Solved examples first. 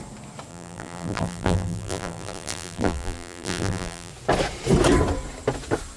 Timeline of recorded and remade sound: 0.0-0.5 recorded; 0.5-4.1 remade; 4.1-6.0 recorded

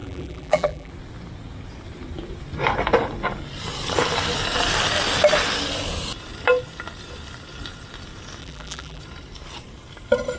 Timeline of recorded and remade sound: 0.0-0.9 remade; 0.9-8.4 recorded; 8.4-9.0 remade; 9.0-10.4 recorded

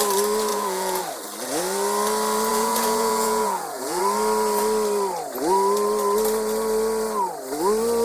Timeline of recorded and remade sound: 0.0-0.5 recorded; 0.5-1.0 remade; 1.0-2.5 recorded; 2.5-4.0 remade; 4.0-8.0 recorded

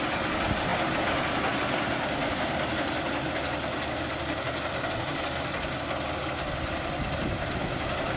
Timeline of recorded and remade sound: 0.0-8.2 recorded

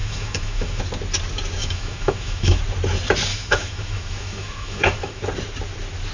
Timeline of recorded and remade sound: 0.0-0.8 remade; 0.8-1.6 recorded; 1.6-2.6 remade; 2.6-3.3 recorded; 3.3-5.2 remade; 5.2-6.1 recorded

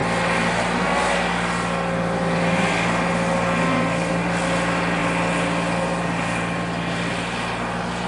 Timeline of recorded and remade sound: 0.0-8.1 recorded

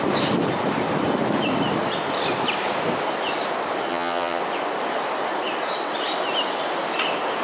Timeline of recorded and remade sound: 0.0-3.9 recorded; 3.9-4.4 remade; 4.4-7.4 recorded

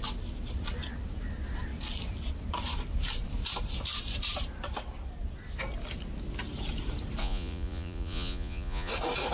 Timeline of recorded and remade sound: 0.0-7.2 recorded; 7.2-8.9 remade; 8.9-9.3 recorded